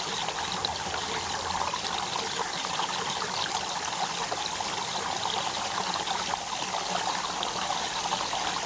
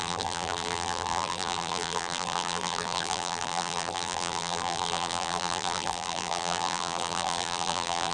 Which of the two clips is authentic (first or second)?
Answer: first